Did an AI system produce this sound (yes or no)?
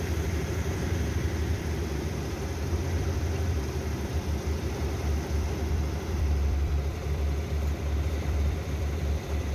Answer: yes